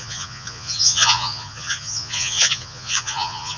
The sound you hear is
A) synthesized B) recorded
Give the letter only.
A